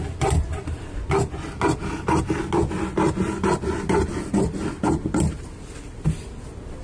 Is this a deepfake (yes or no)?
no